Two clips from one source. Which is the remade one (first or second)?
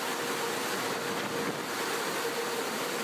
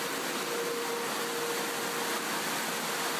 first